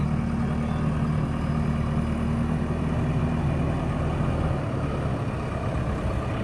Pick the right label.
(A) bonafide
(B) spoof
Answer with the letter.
A